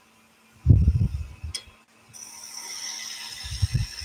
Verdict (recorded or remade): recorded